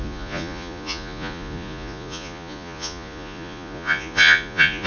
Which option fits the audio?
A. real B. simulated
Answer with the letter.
B